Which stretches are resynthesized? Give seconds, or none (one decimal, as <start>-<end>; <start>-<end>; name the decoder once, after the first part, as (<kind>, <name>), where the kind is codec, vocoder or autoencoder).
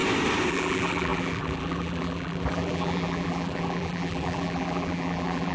0.5-5.5 (vocoder, BigVGAN v2)